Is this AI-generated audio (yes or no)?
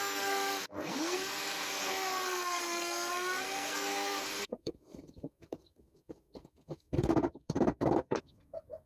yes